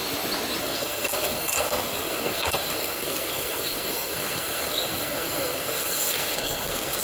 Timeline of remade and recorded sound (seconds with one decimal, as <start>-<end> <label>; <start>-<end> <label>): 0.0-0.6 recorded; 0.6-7.0 remade